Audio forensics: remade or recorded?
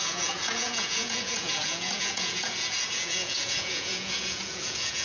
remade